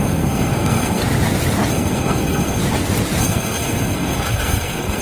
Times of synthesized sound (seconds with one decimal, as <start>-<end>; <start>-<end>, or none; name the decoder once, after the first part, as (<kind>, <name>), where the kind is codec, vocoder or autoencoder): 0.0-1.0 (codec, SNAC); 1.7-2.6; 3.2-5.0